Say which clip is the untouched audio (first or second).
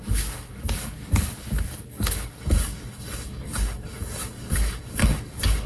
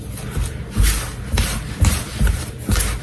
second